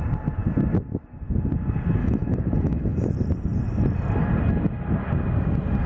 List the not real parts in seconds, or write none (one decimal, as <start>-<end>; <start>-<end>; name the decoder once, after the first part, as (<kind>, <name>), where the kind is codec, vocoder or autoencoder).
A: 2.0-3.1 (autoencoder, DAC-VAE)